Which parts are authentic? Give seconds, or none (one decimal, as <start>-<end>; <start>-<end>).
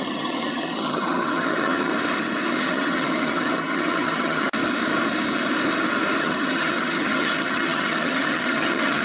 1.9-2.5; 4.4-6.2